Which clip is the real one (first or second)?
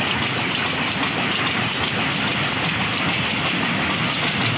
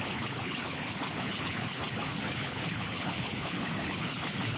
first